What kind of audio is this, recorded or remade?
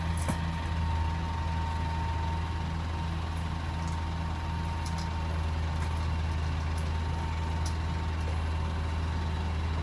recorded